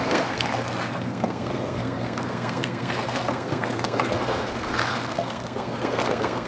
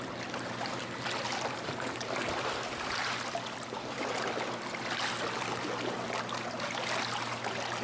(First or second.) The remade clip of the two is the first